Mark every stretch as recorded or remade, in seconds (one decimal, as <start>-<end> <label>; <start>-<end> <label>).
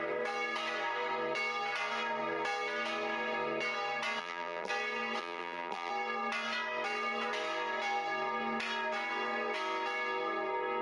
0.0-4.2 recorded; 4.2-4.7 remade; 4.7-5.2 recorded; 5.2-5.9 remade; 5.9-10.8 recorded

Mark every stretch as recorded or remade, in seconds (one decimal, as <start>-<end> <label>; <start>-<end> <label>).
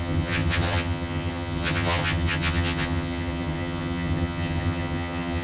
0.0-5.4 remade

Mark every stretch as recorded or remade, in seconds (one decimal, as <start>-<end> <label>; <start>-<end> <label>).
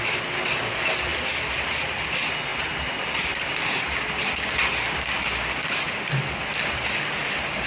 0.0-2.5 remade; 2.5-6.6 recorded; 6.6-7.7 remade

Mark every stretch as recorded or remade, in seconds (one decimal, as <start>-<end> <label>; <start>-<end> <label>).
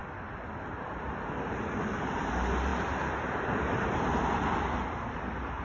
0.0-5.6 recorded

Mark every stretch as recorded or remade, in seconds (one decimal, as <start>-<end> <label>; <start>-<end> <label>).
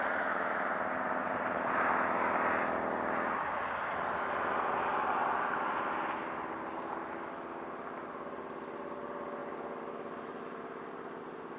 0.0-11.6 recorded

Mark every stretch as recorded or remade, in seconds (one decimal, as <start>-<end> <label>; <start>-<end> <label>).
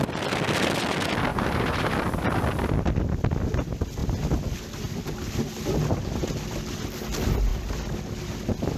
0.0-1.3 recorded; 1.3-1.9 remade; 1.9-8.8 recorded